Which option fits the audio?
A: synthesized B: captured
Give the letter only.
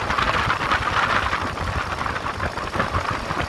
B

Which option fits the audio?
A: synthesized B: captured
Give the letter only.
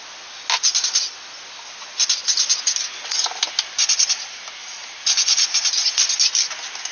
B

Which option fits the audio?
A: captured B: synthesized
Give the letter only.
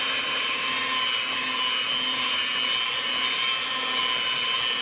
A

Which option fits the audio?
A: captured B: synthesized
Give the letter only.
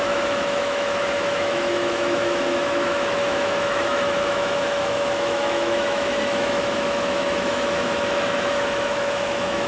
B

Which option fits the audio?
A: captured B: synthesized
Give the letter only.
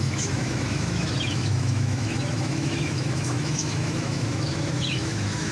B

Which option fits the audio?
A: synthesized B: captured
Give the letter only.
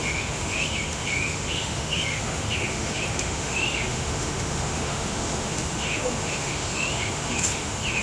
A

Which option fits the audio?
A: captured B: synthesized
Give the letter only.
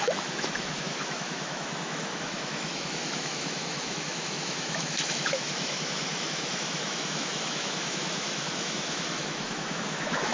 B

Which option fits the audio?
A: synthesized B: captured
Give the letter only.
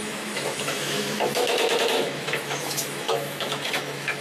A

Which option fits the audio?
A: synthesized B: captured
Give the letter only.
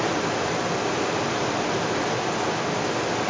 B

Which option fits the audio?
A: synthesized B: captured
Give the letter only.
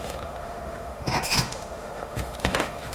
A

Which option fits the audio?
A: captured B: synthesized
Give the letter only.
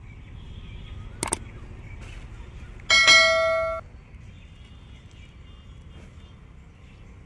A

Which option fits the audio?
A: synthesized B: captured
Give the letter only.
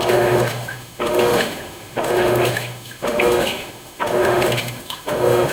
A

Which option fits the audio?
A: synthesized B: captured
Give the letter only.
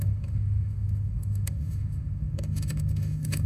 A